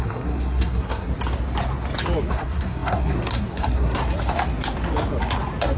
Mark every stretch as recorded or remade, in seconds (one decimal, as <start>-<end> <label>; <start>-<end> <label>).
0.0-1.1 remade; 1.1-2.3 recorded; 2.3-4.0 remade; 4.0-5.8 recorded